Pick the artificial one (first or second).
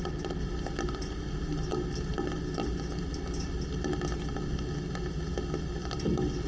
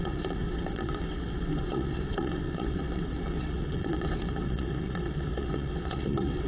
second